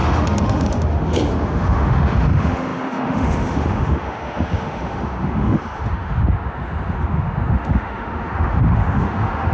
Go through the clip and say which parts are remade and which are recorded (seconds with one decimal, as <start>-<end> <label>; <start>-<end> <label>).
0.0-9.5 remade